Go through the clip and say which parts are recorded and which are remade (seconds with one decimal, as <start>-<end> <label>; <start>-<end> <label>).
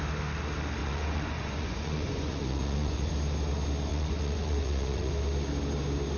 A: 0.0-0.8 recorded; 0.8-3.1 remade; 3.1-3.9 recorded; 3.9-5.1 remade; 5.1-6.2 recorded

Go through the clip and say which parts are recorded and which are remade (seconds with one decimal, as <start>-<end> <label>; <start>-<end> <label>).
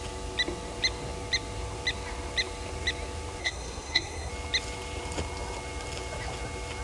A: 0.0-3.4 recorded; 3.4-4.3 remade; 4.3-6.8 recorded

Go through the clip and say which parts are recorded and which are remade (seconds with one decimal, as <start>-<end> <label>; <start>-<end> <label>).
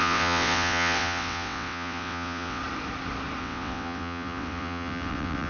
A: 0.0-2.6 remade; 2.6-3.4 recorded; 3.4-5.5 remade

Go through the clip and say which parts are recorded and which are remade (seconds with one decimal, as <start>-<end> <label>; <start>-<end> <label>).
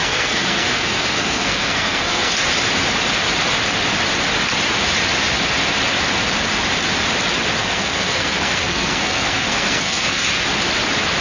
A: 0.0-2.3 remade; 2.3-7.6 recorded; 7.6-10.2 remade; 10.2-11.2 recorded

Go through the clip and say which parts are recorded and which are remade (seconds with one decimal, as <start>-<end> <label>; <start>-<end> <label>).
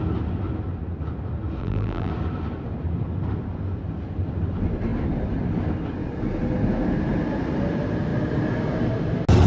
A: 0.0-1.6 recorded; 1.6-2.1 remade; 2.1-9.5 recorded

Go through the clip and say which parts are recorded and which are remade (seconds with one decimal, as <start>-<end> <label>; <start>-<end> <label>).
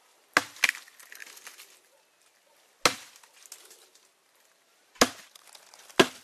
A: 0.0-6.2 recorded